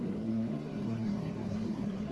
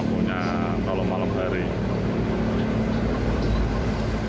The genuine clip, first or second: second